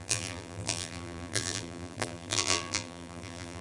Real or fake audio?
fake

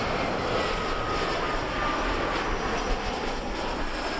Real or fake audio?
real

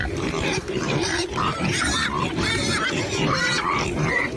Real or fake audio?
fake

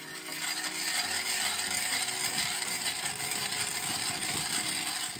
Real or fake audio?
real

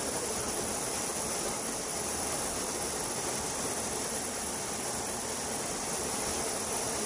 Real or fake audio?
fake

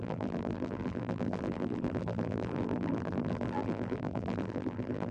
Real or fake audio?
fake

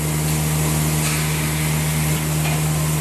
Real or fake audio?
real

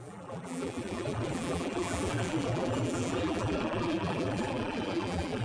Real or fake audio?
fake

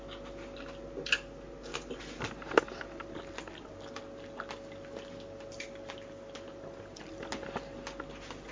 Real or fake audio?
real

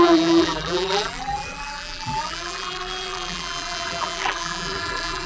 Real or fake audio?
fake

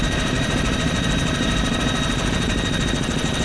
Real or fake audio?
fake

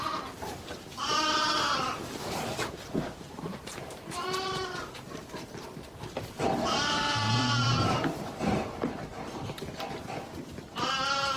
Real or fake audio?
fake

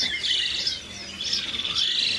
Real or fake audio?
real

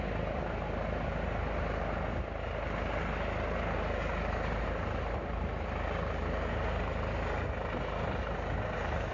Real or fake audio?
real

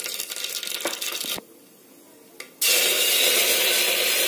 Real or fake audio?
real